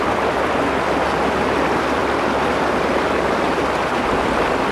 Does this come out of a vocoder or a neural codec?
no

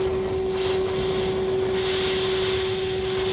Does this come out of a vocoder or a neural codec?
no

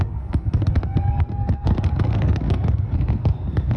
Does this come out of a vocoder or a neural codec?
yes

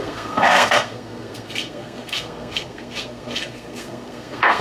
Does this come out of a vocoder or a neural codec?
yes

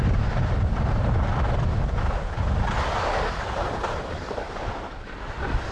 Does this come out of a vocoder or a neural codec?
no